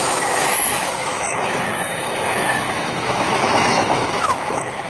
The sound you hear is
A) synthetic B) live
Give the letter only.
A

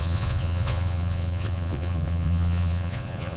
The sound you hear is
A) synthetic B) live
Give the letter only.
A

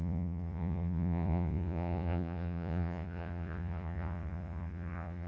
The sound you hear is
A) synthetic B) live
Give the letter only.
A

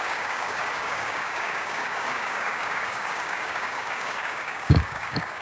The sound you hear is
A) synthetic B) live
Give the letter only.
A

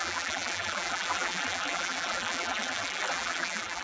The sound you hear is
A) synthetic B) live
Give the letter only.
A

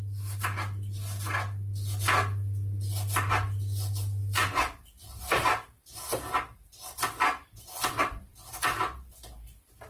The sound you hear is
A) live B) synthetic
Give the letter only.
A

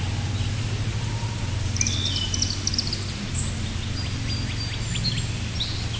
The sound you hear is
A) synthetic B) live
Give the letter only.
B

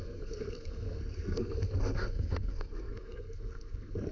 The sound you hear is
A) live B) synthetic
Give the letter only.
B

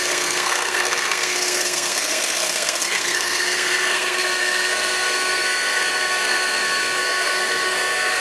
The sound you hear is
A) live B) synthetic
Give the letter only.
B